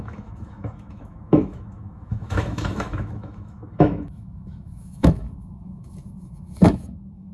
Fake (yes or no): yes